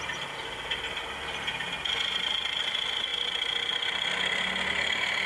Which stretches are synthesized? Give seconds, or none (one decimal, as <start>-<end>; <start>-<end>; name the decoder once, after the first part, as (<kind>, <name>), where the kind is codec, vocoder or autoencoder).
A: none